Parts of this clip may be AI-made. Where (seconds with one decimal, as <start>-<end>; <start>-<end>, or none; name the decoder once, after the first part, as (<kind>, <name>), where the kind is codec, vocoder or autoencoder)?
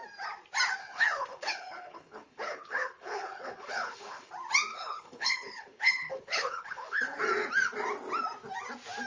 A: 0.8-4.3 (codec, HILCodec); 4.7-7.2